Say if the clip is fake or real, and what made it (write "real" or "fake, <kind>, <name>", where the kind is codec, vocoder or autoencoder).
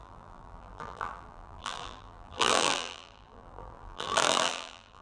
fake, vocoder, BigVGAN v2